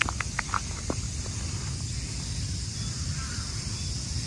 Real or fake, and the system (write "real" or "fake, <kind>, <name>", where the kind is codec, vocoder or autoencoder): real